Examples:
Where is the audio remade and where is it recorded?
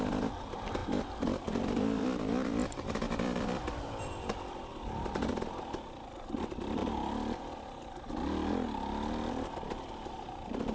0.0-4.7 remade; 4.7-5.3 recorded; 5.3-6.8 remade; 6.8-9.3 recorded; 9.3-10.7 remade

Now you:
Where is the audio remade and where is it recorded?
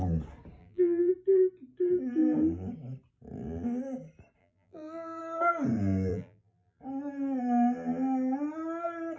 0.0-0.6 recorded; 0.6-1.1 remade; 1.1-4.4 recorded; 4.4-5.2 remade; 5.2-6.1 recorded; 6.1-6.8 remade; 6.8-9.2 recorded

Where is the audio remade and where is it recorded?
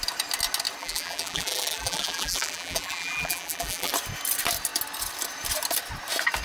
0.0-0.8 recorded; 0.8-3.9 remade; 3.9-6.4 recorded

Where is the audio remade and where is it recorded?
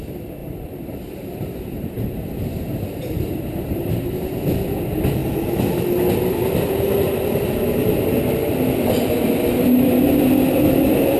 0.0-0.4 recorded; 0.4-4.4 remade; 4.4-11.2 recorded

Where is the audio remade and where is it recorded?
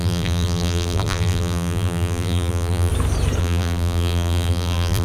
0.0-2.9 remade; 2.9-3.4 recorded; 3.4-5.0 remade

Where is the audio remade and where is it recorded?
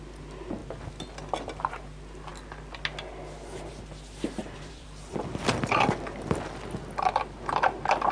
0.0-4.4 recorded; 4.4-6.5 remade; 6.5-8.1 recorded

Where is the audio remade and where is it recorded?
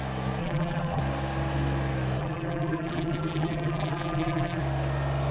0.0-0.4 recorded; 0.4-1.0 remade; 1.0-2.2 recorded; 2.2-4.6 remade; 4.6-5.3 recorded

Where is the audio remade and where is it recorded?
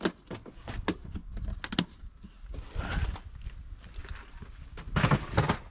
0.0-5.7 recorded